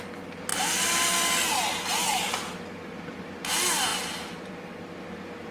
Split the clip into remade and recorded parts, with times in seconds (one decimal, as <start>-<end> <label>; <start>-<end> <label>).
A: 0.0-5.5 recorded